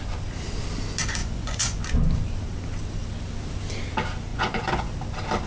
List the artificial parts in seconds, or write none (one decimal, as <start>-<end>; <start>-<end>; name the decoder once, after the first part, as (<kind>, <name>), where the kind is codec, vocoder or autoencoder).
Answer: 1.2-1.8 (vocoder, Vocos); 4.3-4.9